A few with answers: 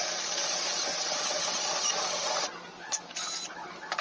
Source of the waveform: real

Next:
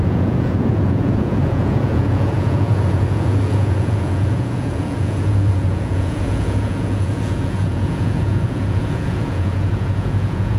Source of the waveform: fake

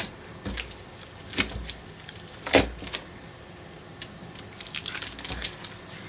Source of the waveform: real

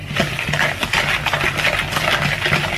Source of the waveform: real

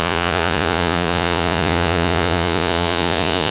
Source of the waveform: fake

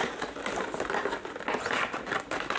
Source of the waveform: real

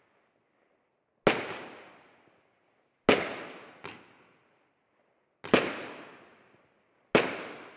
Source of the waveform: real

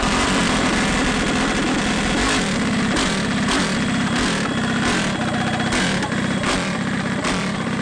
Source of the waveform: real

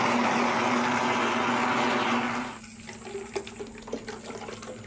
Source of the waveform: real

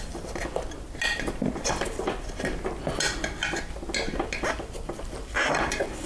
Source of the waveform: real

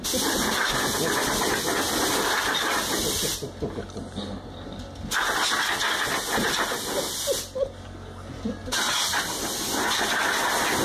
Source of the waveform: real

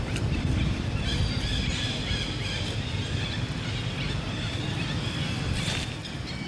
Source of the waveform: real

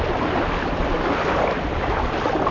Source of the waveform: real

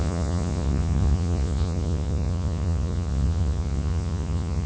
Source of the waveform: fake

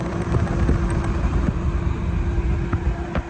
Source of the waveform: real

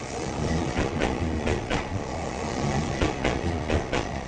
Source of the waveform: fake